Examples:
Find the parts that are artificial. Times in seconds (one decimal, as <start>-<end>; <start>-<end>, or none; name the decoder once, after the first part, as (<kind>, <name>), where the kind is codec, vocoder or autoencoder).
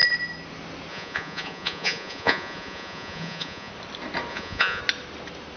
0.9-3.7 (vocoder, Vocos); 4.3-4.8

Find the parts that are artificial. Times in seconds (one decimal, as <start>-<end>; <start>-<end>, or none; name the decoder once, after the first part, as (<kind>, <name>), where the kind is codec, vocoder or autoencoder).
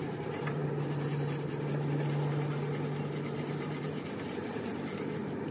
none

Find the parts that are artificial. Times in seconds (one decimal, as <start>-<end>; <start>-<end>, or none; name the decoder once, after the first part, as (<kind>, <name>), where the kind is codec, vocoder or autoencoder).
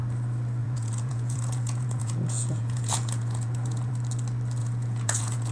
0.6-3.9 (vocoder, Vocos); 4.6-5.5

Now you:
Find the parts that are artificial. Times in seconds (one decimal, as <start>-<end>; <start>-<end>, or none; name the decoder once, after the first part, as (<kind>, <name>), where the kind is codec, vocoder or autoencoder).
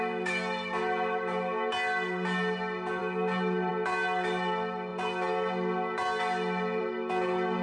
none